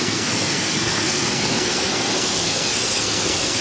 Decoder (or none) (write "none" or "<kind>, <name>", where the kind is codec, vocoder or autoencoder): codec, SNAC